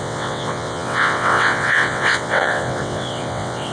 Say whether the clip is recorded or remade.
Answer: remade